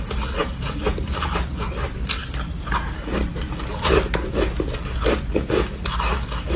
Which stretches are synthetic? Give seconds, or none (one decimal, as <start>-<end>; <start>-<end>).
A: none